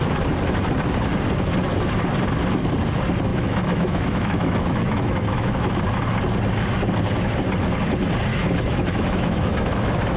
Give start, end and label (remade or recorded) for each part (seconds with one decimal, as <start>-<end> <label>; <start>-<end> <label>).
0.0-3.3 recorded; 3.3-5.8 remade; 5.8-8.3 recorded; 8.3-10.2 remade